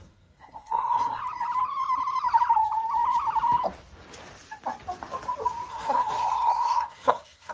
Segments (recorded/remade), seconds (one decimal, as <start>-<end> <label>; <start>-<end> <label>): 0.0-1.2 remade; 1.2-5.7 recorded; 5.7-7.5 remade